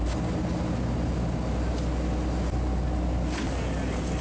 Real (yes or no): yes